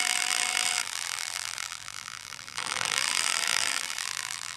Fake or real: fake